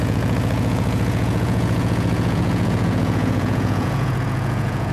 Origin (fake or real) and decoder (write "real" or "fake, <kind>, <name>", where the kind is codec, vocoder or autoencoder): fake, vocoder, Vocos